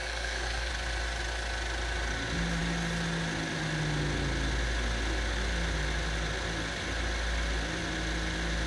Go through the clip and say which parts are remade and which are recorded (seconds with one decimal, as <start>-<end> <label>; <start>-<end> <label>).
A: 0.0-0.7 remade; 0.7-8.7 recorded